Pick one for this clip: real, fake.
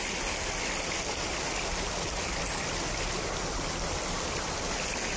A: real